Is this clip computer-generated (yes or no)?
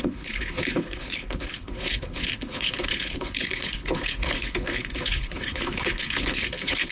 yes